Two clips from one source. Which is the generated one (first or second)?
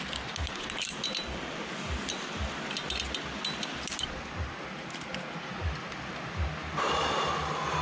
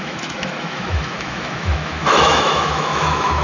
second